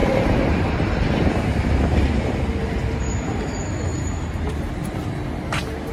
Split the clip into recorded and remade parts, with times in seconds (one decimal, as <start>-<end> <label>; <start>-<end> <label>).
0.0-2.3 remade; 2.3-3.9 recorded; 3.9-5.0 remade; 5.0-5.9 recorded